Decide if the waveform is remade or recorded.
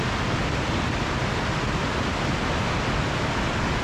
recorded